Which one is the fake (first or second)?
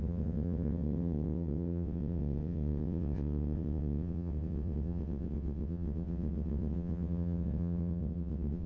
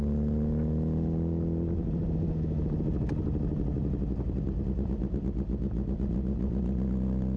first